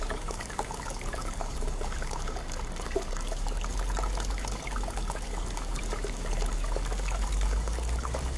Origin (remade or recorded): remade